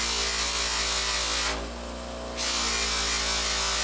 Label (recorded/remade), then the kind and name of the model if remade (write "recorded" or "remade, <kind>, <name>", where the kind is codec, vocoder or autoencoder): recorded